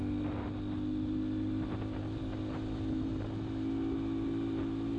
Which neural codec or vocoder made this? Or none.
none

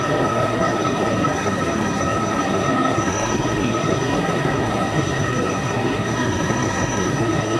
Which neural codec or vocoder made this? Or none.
codec, SNAC